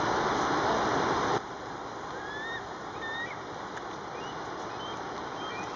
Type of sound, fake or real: real